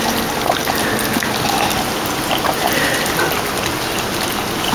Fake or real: real